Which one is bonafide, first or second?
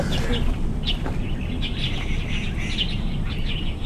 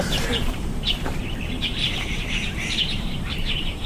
first